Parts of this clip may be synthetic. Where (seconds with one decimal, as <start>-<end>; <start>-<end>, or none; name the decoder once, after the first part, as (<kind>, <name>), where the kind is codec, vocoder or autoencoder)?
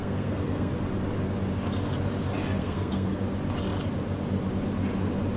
0.0-0.7 (codec, SNAC); 2.6-3.2